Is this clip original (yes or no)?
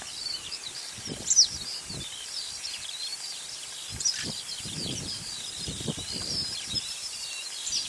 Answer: no